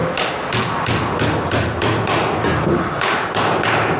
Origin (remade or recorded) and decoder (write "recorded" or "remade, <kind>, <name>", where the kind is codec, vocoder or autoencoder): recorded